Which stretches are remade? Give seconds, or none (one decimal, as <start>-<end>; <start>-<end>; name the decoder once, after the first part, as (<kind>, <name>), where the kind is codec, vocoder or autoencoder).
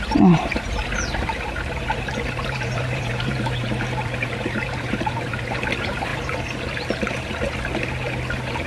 0.0-6.1 (vocoder, BigVGAN v2)